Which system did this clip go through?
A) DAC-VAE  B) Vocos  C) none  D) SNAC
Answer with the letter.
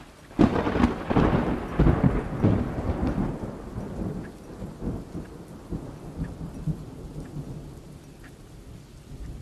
C